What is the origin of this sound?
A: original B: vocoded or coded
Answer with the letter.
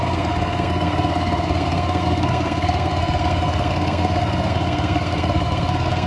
B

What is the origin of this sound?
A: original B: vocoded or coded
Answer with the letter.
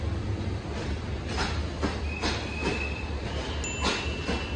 A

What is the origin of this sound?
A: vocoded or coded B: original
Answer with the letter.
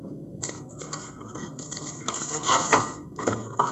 A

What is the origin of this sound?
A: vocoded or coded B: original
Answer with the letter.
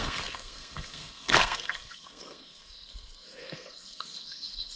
A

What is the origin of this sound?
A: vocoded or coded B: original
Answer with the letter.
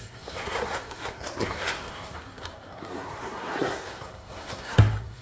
A